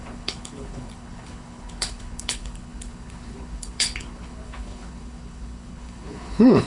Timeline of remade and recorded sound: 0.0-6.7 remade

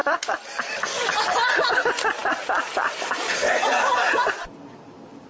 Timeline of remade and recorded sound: 0.0-5.3 recorded

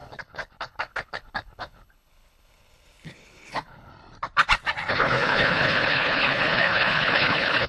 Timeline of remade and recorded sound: 0.0-3.9 remade; 3.9-4.9 recorded; 4.9-7.7 remade

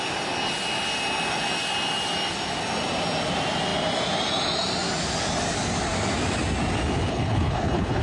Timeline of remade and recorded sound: 0.0-7.1 recorded; 7.1-8.0 remade